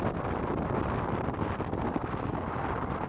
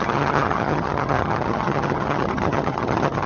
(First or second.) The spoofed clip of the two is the second